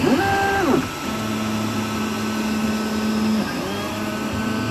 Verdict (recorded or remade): recorded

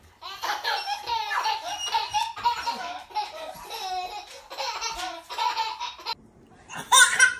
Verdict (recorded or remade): recorded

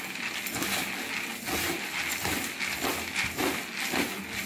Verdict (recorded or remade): recorded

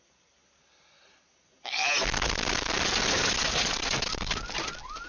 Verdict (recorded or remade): recorded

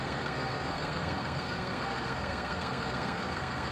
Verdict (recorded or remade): remade